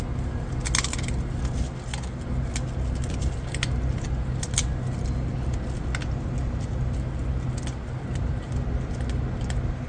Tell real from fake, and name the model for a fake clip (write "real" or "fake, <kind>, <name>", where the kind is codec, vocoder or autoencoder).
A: real